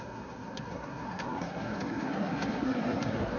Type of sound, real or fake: fake